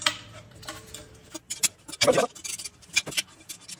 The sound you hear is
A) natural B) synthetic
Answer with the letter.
B